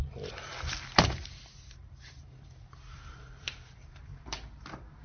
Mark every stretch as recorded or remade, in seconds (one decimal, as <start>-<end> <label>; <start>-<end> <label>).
0.0-1.4 remade; 1.4-1.8 recorded; 1.8-5.0 remade